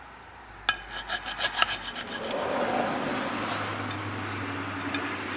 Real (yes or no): yes